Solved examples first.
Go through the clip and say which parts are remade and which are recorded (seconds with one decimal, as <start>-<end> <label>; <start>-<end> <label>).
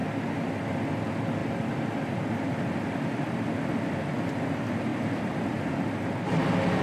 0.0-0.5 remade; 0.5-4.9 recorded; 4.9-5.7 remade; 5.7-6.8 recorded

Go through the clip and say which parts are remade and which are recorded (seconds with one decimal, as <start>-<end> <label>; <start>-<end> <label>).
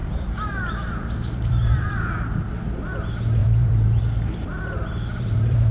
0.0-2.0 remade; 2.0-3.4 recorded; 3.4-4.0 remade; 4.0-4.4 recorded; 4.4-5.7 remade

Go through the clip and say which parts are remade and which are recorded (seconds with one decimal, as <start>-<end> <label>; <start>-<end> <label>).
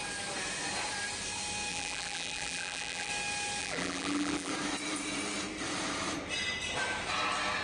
0.0-1.7 recorded; 1.7-3.1 remade; 3.1-3.6 recorded; 3.6-4.5 remade; 4.5-7.6 recorded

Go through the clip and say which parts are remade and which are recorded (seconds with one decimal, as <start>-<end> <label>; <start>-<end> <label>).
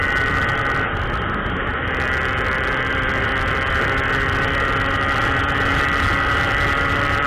0.0-1.7 remade; 1.7-2.9 recorded; 2.9-3.3 remade; 3.3-4.4 recorded; 4.4-7.3 remade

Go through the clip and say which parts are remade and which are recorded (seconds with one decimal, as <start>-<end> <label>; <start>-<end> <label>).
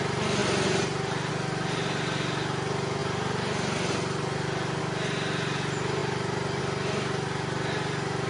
0.0-0.4 recorded; 0.4-1.3 remade; 1.3-3.0 recorded; 3.0-4.8 remade; 4.8-6.0 recorded; 6.0-6.6 remade; 6.6-8.3 recorded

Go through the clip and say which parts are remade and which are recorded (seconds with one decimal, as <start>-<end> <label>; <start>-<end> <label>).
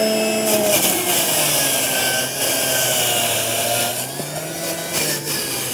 0.0-5.7 recorded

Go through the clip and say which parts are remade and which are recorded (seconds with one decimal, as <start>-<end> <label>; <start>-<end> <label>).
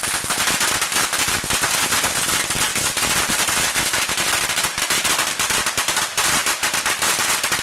0.0-7.6 recorded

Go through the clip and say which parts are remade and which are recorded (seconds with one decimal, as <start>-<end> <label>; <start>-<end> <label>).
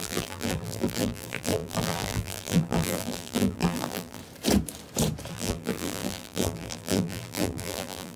0.0-4.2 remade; 4.2-5.3 recorded; 5.3-8.2 remade